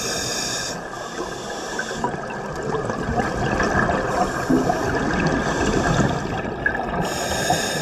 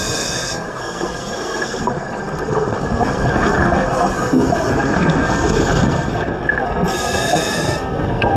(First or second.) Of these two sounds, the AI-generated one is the second